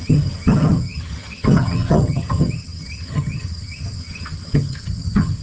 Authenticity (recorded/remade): remade